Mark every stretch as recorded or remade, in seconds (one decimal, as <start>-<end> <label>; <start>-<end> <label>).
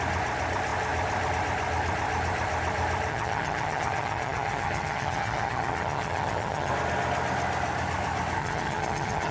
0.0-3.1 recorded; 3.1-6.7 remade; 6.7-8.4 recorded; 8.4-9.3 remade